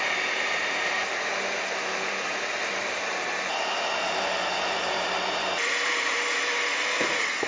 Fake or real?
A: fake